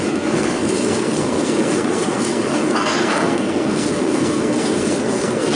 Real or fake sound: fake